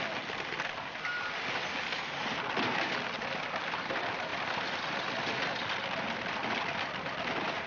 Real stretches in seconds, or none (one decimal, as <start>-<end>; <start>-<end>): 0.0-7.7